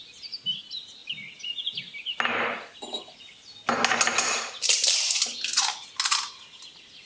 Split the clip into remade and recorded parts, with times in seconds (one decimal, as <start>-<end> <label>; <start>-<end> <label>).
0.0-7.1 recorded